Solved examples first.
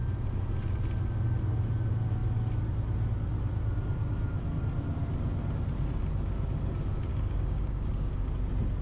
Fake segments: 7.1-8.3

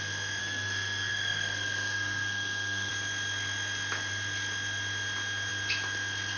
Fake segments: 0.4-2.9

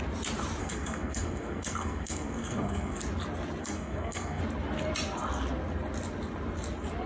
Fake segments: 0.6-3.0; 3.6-4.4

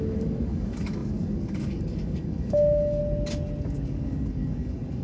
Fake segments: 0.0-3.0; 3.6-5.0

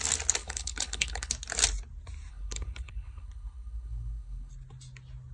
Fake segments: 0.4-1.3; 2.3-4.5

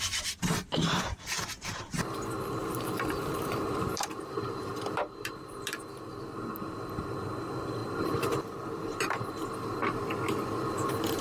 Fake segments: 2.6-5.8

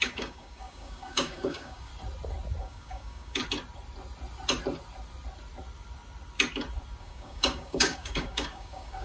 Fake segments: 0.0-1.9; 2.6-3.4; 7.0-9.0